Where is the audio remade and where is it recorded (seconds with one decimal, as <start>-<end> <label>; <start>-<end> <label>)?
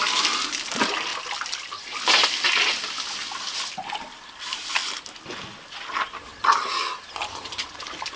0.0-8.2 recorded